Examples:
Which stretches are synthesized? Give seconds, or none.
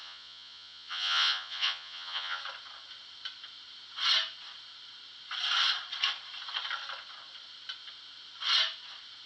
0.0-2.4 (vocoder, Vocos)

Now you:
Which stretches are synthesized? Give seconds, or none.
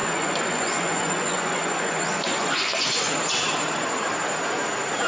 0.0-3.1 (vocoder, Vocos)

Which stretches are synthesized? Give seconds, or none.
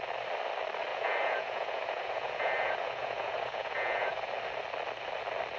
0.9-4.3 (vocoder, Vocos)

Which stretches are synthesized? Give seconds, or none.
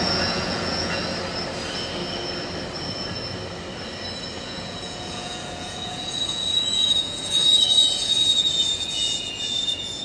0.0-1.0 (vocoder, Vocos); 4.4-10.0